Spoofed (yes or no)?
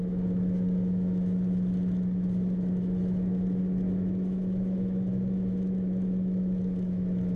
yes